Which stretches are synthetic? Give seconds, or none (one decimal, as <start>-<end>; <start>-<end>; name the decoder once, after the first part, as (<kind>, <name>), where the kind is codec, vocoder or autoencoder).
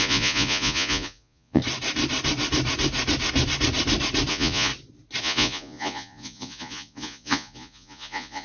0.0-1.6 (vocoder, Vocos); 4.3-4.7; 5.2-8.4